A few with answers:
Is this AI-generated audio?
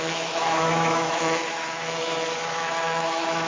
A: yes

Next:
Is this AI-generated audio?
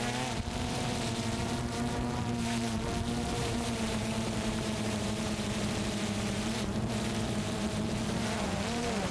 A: yes